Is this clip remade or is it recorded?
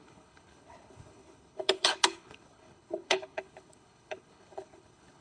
remade